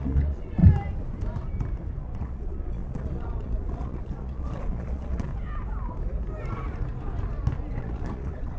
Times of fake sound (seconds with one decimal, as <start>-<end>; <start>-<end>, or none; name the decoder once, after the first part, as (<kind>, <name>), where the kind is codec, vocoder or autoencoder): 0.0-0.6 (vocoder, Vocos); 2.0-5.3; 7.8-8.6